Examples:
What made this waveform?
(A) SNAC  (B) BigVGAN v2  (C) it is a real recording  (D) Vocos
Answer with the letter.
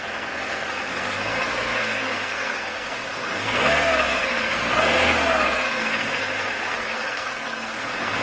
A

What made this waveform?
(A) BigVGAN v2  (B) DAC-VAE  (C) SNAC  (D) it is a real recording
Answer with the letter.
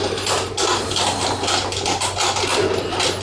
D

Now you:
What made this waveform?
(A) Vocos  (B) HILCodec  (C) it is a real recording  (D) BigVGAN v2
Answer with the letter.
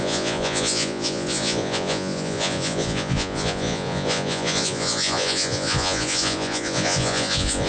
A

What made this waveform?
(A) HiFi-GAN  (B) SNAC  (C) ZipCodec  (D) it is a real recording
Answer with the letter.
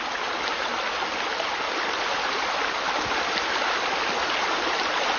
D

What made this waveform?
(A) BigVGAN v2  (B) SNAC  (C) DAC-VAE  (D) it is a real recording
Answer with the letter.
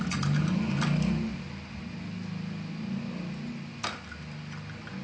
D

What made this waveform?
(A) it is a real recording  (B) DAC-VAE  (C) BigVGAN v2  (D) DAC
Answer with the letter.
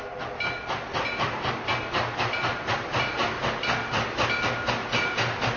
A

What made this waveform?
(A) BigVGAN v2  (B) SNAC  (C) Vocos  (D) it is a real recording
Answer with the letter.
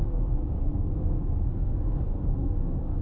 B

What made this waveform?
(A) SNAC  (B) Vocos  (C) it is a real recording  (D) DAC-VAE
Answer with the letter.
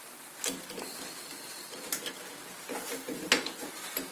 C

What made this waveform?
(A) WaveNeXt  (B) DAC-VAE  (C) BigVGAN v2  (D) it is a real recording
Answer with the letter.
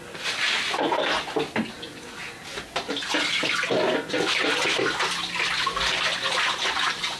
D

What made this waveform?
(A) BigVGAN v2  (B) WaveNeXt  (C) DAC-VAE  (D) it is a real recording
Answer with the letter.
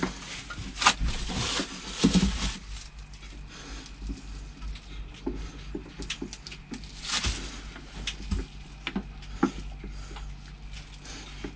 D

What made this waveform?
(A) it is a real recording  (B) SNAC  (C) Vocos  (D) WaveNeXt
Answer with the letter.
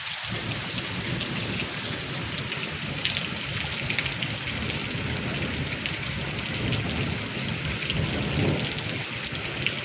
A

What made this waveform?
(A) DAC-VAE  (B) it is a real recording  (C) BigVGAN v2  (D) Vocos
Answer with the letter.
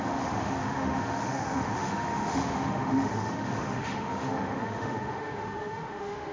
A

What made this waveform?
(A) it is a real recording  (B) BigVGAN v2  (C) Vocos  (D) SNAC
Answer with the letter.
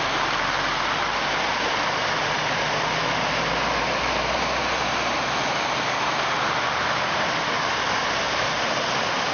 A